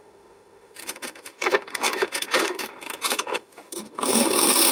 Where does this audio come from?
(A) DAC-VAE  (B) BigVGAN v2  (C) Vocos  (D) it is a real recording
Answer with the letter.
A